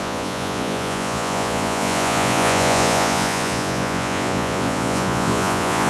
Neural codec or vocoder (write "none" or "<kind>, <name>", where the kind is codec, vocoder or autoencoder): vocoder, Vocos